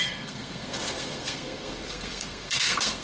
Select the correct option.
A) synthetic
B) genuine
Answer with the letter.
A